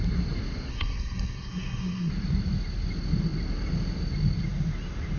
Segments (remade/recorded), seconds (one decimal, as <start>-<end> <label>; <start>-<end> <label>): 0.0-0.7 recorded; 0.7-2.1 remade; 2.1-5.2 recorded